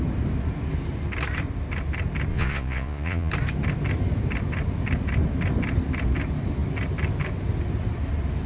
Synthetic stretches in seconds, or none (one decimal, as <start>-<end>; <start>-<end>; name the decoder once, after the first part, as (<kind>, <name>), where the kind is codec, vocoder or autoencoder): 2.3-3.3 (vocoder, Vocos)